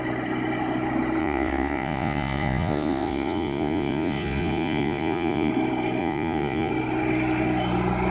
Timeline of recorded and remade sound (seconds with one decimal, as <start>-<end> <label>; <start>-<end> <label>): 0.0-1.2 recorded; 1.2-5.5 remade; 5.5-6.0 recorded; 6.0-6.7 remade; 6.7-8.1 recorded